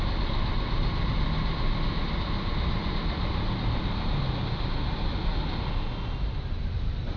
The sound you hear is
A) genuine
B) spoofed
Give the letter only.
A